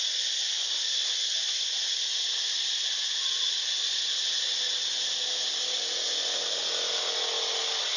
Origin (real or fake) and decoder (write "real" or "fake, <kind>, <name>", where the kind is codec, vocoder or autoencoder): real